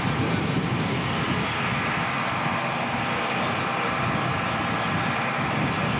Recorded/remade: recorded